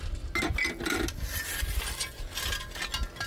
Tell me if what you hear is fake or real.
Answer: real